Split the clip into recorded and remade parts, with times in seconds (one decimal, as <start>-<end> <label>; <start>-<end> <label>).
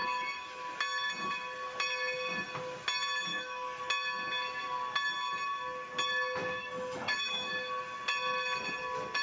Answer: 0.0-0.6 remade; 0.6-3.3 recorded; 3.3-3.8 remade; 3.8-6.4 recorded; 6.4-7.5 remade; 7.5-9.2 recorded